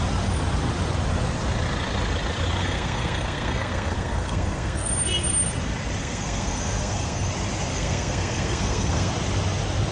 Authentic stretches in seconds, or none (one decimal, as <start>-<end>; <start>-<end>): 0.0-2.6; 4.9-6.0; 7.3-7.7; 9.1-9.9